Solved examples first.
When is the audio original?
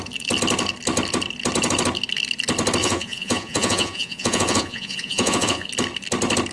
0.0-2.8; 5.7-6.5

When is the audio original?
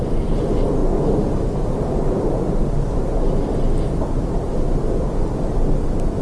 0.0-6.2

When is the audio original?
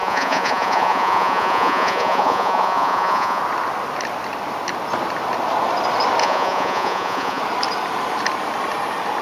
3.4-6.2; 7.4-9.2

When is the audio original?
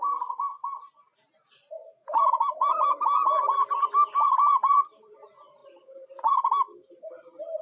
0.0-2.0; 2.8-5.6; 6.3-7.6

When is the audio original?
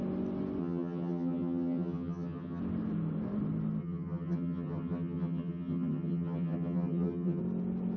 0.0-0.6; 2.6-3.8; 7.4-8.0